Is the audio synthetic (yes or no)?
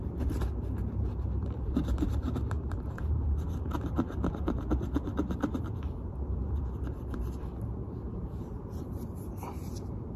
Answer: yes